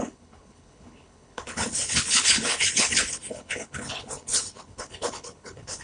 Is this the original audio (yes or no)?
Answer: no